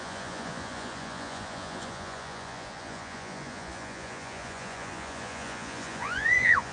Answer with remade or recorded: remade